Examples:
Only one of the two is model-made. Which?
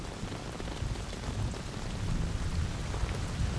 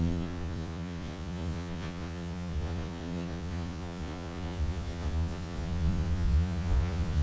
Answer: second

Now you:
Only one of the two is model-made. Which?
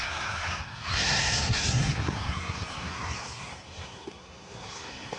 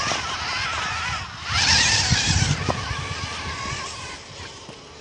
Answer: first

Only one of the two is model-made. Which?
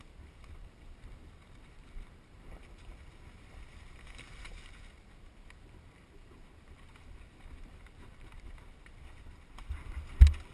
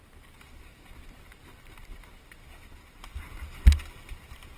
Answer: first